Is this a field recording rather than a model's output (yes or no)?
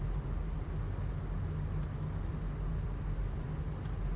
yes